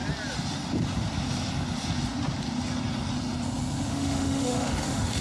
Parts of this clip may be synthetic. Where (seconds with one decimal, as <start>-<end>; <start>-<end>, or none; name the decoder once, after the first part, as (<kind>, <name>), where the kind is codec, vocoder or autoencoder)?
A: 3.9-5.2 (autoencoder, DAC-VAE)